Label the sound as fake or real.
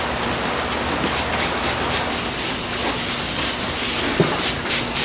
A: real